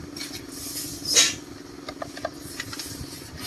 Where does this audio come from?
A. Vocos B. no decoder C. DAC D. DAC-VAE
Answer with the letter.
B